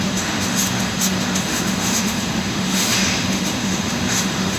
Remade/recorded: remade